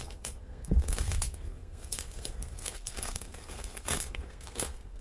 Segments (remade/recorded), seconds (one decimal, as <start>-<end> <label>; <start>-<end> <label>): 0.0-5.0 remade